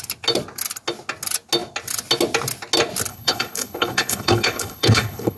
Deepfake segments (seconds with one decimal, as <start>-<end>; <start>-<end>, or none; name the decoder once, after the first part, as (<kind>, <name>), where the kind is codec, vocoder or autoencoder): 3.1-5.4 (codec, HILCodec)